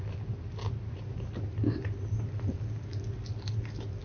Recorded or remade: recorded